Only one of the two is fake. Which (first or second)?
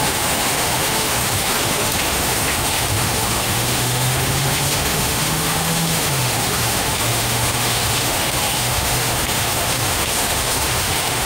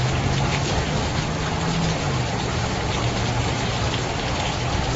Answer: first